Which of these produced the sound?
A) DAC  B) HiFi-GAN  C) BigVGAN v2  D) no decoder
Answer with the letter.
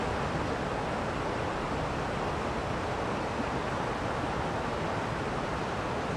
D